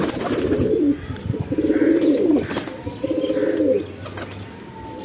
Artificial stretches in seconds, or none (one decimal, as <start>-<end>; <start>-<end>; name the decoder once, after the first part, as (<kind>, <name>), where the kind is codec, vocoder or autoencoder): 0.0-2.4 (vocoder, BigVGAN v2)